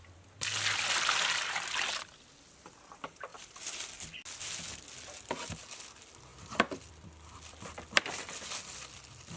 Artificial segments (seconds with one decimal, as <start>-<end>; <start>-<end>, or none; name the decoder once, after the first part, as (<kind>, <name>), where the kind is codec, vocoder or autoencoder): none